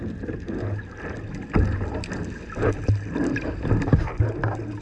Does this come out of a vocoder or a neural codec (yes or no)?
no